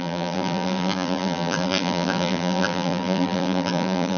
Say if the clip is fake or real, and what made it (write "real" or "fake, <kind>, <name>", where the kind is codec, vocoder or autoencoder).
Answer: fake, vocoder, BigVGAN v2